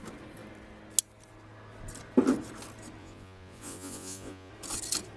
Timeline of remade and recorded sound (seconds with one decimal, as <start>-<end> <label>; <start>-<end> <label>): 0.0-3.0 recorded; 3.0-4.5 remade; 4.5-5.2 recorded